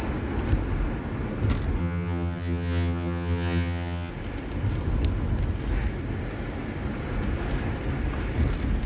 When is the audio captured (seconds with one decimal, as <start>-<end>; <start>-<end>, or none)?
0.0-1.8; 4.1-8.9